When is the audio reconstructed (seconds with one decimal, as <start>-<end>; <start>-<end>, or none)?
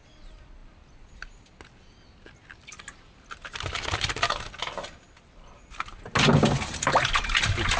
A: none